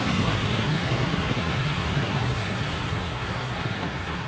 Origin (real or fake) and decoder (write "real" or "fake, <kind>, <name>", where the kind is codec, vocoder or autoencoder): fake, codec, SNAC